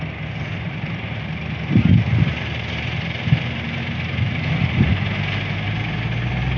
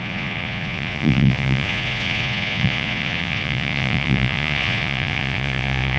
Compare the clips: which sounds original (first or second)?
first